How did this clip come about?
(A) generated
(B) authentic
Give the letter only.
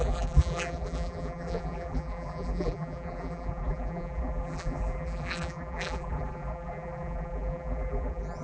A